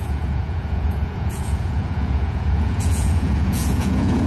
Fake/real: fake